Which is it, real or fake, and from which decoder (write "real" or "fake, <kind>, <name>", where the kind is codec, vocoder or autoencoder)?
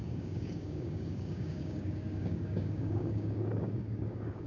fake, codec, DAC